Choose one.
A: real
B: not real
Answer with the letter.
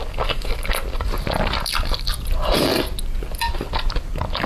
A